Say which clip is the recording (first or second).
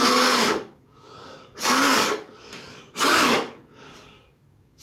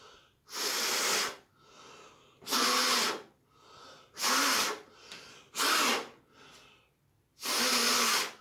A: second